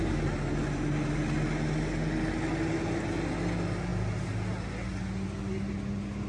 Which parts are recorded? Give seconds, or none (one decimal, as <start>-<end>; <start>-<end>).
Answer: 0.0-6.3